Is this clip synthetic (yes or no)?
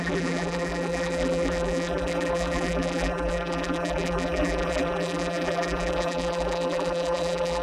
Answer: yes